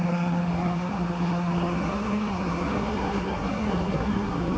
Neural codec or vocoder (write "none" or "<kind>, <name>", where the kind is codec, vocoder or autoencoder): codec, SNAC